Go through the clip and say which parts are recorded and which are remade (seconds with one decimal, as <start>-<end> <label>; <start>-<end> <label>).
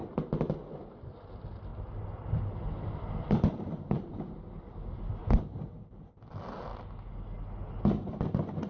0.0-0.8 recorded; 0.8-5.2 remade; 5.2-5.8 recorded; 5.8-6.7 remade; 6.7-8.7 recorded